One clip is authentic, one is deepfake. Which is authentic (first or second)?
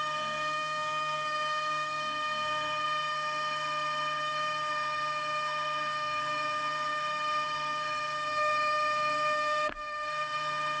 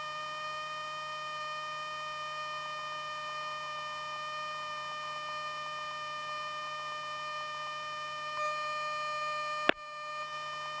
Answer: second